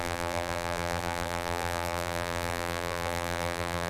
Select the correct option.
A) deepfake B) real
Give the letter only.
A